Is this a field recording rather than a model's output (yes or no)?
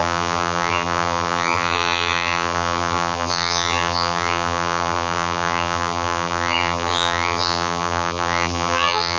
no